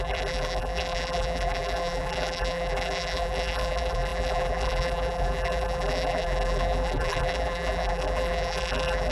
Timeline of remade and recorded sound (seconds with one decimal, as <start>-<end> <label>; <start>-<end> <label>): 0.0-9.1 remade